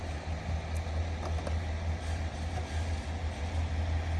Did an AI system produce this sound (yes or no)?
no